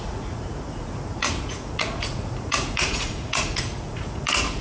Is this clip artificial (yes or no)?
yes